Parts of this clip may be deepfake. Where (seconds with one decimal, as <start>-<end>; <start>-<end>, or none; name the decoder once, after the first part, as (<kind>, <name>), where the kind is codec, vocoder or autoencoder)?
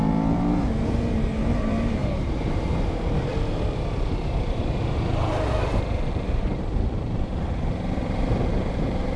0.0-9.2 (vocoder, BigVGAN v2)